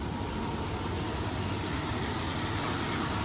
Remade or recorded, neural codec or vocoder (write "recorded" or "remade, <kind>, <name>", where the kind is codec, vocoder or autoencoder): recorded